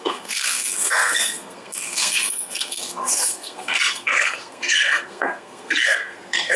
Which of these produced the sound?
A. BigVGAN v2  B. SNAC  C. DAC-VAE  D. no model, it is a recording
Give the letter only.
B